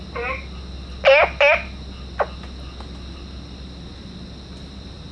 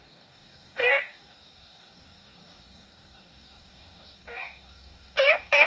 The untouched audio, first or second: first